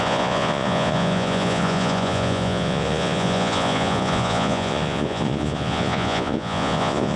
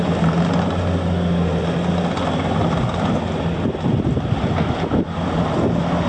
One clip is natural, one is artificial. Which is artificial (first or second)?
first